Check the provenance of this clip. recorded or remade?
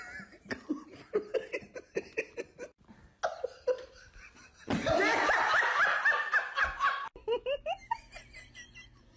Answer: recorded